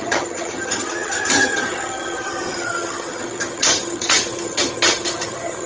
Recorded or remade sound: remade